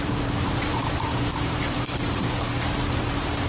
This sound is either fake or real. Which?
fake